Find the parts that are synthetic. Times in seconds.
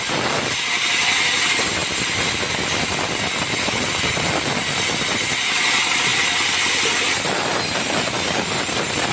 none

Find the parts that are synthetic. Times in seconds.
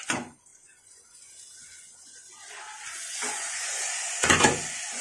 0.0-5.0 (vocoder, Vocos)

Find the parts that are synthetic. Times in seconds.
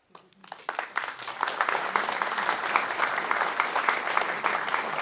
none